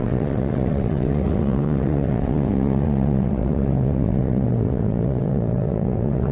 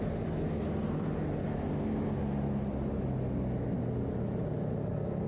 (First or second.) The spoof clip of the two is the first